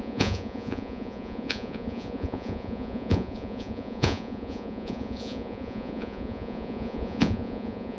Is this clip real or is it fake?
fake